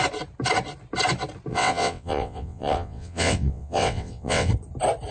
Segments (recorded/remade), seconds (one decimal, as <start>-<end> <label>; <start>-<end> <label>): 0.0-1.5 recorded; 1.5-4.5 remade; 4.5-5.1 recorded